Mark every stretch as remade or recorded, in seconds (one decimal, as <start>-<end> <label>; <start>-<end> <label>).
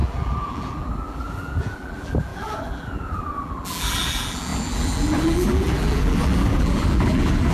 0.0-7.5 remade